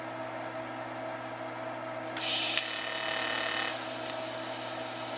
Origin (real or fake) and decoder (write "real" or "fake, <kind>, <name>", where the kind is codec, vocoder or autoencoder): real